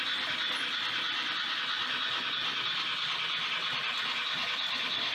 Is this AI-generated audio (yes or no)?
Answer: no